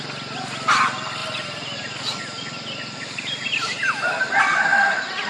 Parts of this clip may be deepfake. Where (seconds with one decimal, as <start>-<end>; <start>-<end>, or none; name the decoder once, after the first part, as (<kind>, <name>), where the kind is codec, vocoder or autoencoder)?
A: none